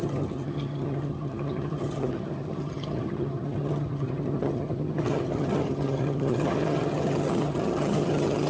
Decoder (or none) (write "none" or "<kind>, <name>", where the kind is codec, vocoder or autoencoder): vocoder, HiFi-GAN